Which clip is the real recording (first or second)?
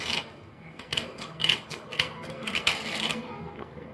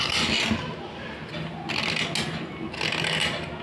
second